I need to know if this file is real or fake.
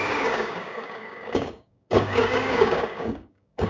fake